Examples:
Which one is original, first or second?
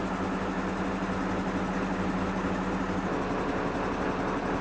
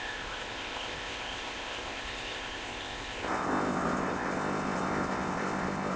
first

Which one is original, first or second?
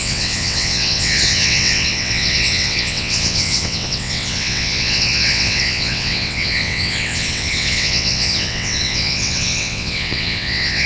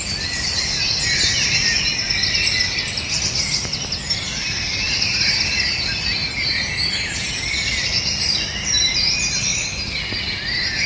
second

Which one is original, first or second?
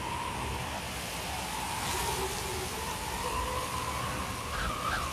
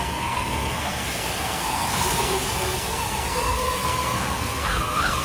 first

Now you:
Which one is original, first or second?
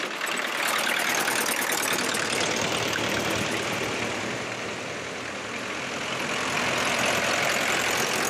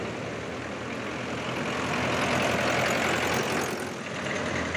second